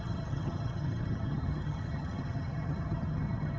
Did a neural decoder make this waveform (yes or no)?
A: yes